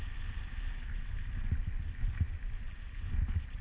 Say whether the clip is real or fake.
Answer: real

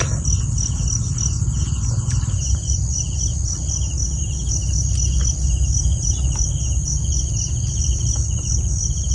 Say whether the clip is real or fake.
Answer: real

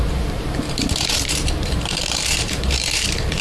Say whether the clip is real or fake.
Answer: fake